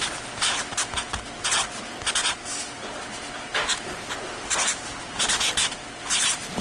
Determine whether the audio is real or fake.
real